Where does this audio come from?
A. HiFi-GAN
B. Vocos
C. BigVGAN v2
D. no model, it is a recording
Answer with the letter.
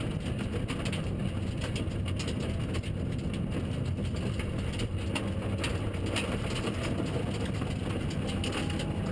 D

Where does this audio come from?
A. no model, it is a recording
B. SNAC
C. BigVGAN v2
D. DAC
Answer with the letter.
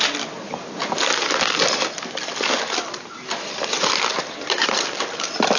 A